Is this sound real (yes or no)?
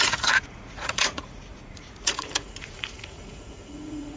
no